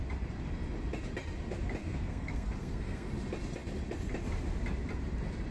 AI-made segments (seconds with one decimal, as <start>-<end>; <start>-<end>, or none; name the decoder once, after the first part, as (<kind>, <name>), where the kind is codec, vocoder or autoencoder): 1.8-3.1 (codec, SNAC)